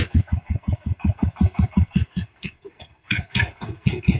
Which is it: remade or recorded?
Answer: remade